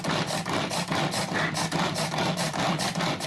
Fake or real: real